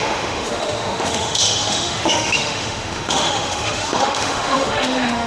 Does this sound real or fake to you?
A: fake